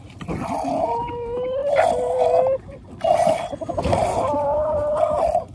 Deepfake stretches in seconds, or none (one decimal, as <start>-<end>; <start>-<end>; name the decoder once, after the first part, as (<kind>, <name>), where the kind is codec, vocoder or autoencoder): none